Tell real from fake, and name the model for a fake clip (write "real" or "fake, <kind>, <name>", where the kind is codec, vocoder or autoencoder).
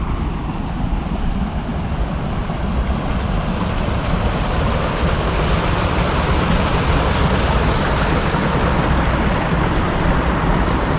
real